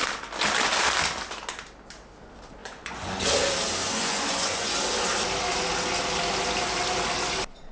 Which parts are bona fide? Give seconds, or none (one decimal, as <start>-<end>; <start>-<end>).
0.0-2.6; 3.2-3.8; 4.7-7.7